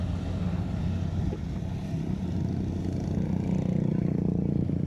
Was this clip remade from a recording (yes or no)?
no